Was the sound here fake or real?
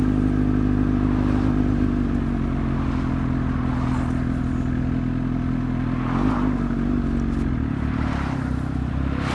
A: real